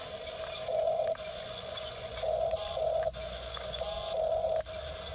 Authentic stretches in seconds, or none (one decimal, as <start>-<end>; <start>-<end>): 0.0-0.7; 3.8-5.1